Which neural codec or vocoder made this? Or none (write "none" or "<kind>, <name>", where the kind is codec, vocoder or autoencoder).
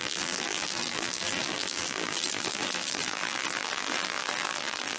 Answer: vocoder, BigVGAN v2